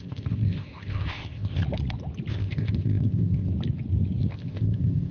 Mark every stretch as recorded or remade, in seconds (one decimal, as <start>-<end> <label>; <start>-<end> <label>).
0.0-1.6 remade; 1.6-2.3 recorded; 2.3-3.5 remade; 3.5-4.3 recorded; 4.3-5.1 remade